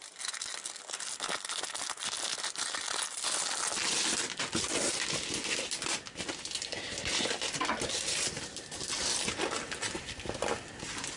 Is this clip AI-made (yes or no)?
no